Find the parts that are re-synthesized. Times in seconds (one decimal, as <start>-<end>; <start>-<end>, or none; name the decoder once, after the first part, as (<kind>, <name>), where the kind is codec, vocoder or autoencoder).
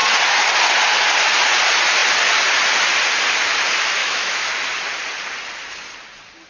4.0-4.5 (autoencoder, DAC-VAE)